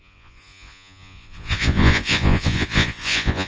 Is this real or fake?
fake